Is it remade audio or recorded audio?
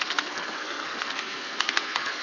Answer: remade